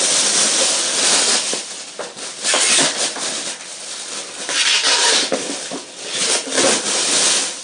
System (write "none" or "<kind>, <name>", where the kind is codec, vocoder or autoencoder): vocoder, BigVGAN v2